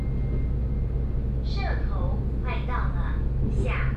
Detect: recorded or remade recorded